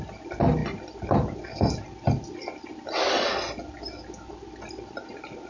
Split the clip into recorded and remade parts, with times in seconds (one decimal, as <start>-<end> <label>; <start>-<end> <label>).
0.0-5.5 recorded